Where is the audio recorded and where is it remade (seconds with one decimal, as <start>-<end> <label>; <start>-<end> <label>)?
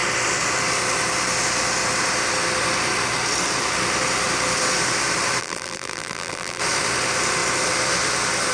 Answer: 0.0-5.4 recorded; 5.4-6.6 remade; 6.6-8.5 recorded